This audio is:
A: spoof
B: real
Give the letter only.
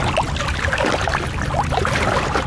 B